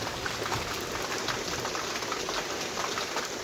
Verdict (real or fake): real